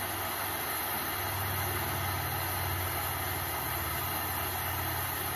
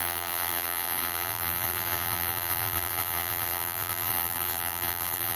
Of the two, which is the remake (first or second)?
second